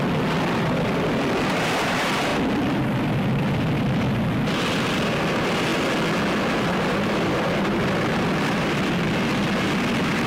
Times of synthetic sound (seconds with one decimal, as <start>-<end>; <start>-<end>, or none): 0.0-5.7; 6.5-10.3